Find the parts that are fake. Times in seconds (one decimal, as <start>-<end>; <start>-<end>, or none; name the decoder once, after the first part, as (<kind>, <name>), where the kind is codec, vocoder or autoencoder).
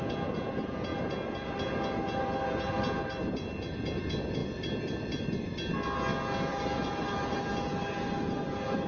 6.5-7.4 (vocoder, BigVGAN v2)